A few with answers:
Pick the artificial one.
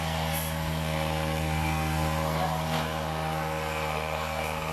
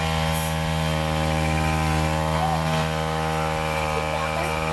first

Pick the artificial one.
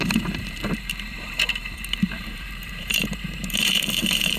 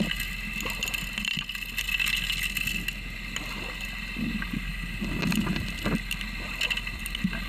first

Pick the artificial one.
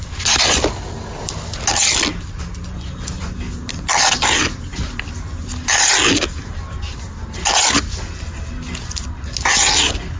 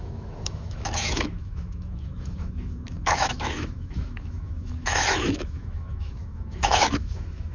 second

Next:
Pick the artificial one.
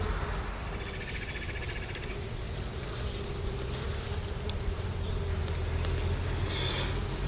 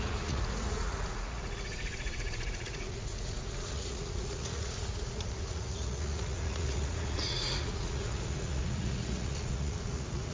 second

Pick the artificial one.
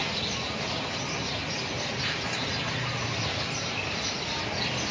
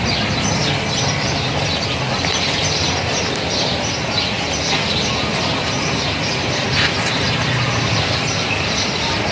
second